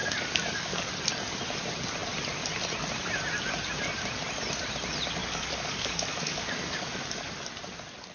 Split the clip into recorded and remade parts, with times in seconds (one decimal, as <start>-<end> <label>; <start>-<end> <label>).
0.0-0.9 remade; 0.9-5.2 recorded; 5.2-7.3 remade; 7.3-8.1 recorded

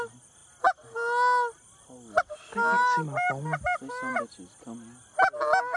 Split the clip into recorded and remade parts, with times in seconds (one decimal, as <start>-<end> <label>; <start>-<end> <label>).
0.0-5.8 recorded

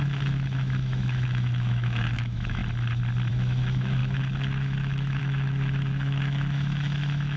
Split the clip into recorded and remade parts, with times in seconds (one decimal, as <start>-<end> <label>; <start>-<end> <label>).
0.0-2.6 remade; 2.6-3.3 recorded; 3.3-7.4 remade

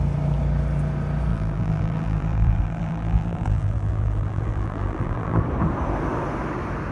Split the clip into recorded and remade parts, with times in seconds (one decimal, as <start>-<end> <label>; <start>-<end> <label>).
0.0-1.3 recorded; 1.3-5.4 remade; 5.4-6.9 recorded

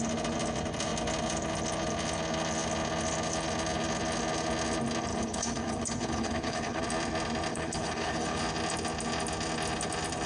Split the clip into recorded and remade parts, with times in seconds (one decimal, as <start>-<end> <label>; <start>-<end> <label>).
0.0-5.1 recorded; 5.1-6.8 remade; 6.8-7.5 recorded; 7.5-8.4 remade; 8.4-10.3 recorded

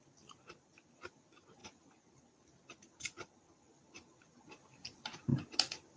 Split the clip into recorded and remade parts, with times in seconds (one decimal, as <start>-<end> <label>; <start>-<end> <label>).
0.0-6.0 recorded

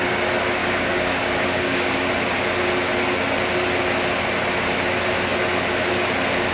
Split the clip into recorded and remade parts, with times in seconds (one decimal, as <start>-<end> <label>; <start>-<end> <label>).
0.0-0.6 recorded; 0.6-2.1 remade; 2.1-6.5 recorded